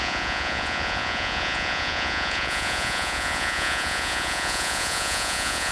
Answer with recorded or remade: remade